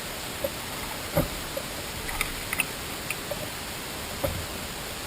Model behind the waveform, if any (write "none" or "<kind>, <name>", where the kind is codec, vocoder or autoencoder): none